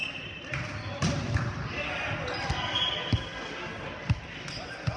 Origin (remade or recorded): recorded